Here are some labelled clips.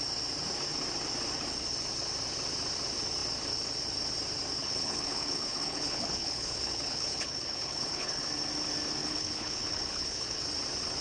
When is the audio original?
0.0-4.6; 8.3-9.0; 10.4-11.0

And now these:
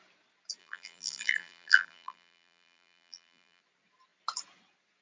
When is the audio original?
0.0-0.6; 3.6-5.0